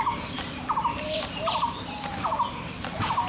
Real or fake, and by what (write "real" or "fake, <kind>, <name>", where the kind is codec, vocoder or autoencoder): fake, vocoder, BigVGAN v2